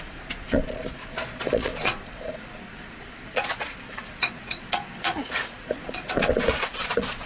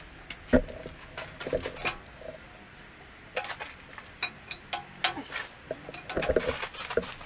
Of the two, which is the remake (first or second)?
first